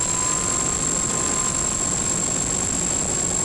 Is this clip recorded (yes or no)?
yes